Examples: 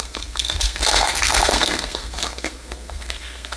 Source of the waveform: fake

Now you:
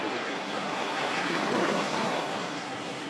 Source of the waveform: fake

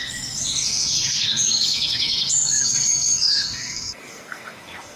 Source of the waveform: fake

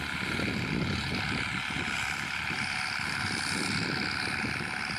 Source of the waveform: real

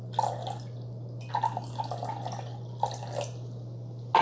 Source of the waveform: real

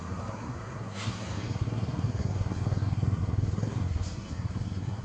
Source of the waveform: fake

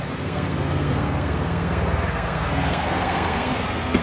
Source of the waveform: fake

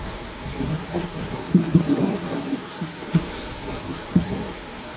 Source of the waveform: fake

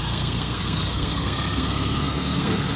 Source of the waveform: fake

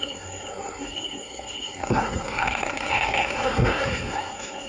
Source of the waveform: fake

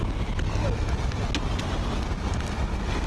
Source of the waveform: real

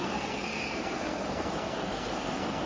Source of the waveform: fake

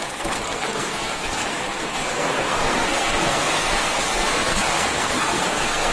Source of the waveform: fake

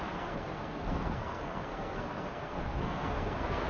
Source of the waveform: fake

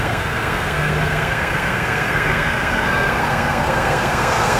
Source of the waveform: fake